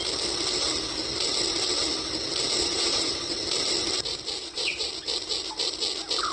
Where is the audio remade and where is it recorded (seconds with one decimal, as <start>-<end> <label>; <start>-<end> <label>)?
0.0-2.6 recorded; 2.6-3.4 remade; 3.4-4.4 recorded; 4.4-4.9 remade; 4.9-6.3 recorded